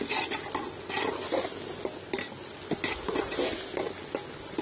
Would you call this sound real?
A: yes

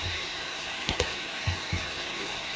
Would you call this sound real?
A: no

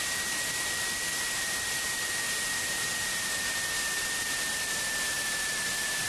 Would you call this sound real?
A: yes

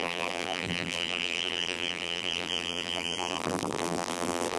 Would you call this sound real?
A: no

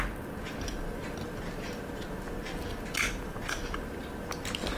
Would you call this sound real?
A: yes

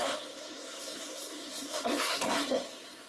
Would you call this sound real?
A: no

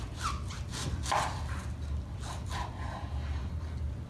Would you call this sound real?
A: yes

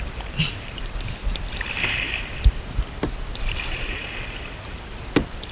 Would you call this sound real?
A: no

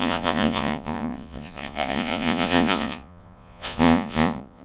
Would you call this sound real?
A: no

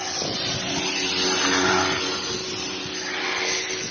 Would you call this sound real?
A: yes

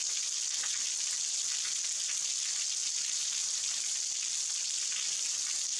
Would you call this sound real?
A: yes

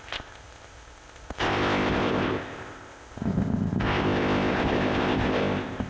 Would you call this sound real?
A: no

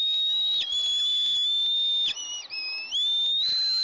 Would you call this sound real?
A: yes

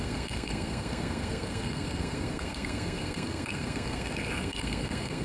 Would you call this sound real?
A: no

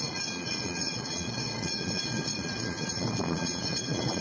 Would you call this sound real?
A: no